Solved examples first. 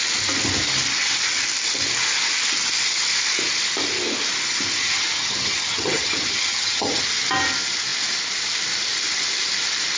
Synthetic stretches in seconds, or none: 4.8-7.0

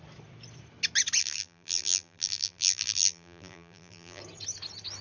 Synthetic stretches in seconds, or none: 1.2-4.2

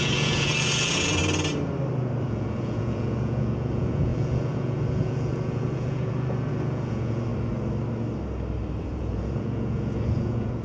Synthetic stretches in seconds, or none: 0.0-1.2; 2.2-7.3; 8.8-10.6